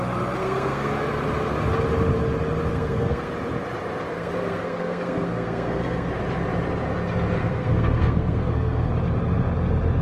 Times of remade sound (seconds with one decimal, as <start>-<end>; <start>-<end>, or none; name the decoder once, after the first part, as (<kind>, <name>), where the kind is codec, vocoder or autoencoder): 0.4-0.9 (codec, SNAC); 2.7-3.3; 4.1-6.1; 7.4-8.9